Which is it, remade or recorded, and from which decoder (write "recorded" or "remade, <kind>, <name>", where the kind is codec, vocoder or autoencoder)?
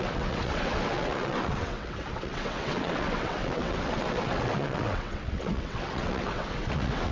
remade, vocoder, WaveNeXt